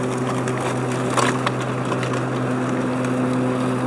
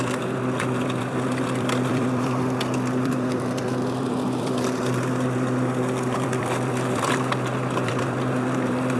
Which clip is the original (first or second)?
first